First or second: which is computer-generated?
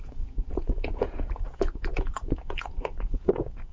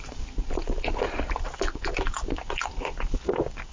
first